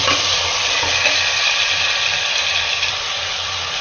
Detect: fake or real real